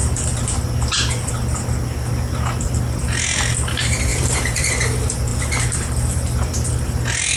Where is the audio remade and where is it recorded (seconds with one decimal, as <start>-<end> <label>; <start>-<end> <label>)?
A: 0.0-4.1 recorded; 4.1-4.7 remade; 4.7-7.4 recorded